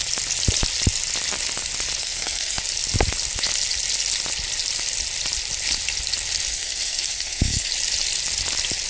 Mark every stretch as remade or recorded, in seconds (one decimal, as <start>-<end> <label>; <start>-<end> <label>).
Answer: 0.0-2.0 recorded; 2.0-2.6 remade; 2.6-6.5 recorded; 6.5-7.7 remade; 7.7-8.9 recorded